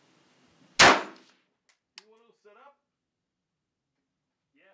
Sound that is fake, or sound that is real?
real